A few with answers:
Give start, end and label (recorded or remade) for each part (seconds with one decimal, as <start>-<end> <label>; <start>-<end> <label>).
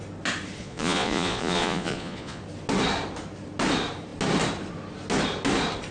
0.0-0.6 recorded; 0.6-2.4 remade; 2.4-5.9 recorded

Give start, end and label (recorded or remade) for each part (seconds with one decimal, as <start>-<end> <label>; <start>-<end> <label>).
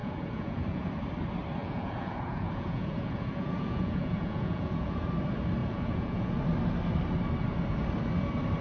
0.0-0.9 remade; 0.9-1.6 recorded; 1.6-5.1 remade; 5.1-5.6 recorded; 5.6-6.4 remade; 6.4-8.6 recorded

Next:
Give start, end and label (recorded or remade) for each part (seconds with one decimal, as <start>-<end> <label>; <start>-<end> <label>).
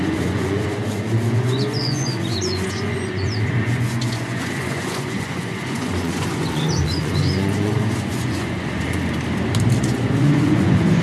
0.0-9.0 remade; 9.0-9.8 recorded; 9.8-11.0 remade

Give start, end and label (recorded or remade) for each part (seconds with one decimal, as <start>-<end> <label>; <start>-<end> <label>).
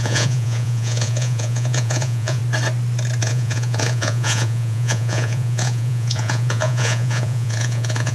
0.0-2.4 remade; 2.4-3.2 recorded; 3.2-8.1 remade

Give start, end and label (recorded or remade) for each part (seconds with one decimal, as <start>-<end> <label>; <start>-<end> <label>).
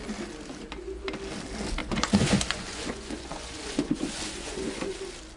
0.0-1.8 recorded; 1.8-5.0 remade; 5.0-5.4 recorded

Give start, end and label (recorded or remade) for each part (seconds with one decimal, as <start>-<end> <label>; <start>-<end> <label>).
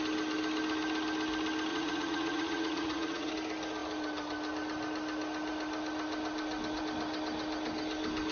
0.0-1.7 recorded; 1.7-3.3 remade; 3.3-8.3 recorded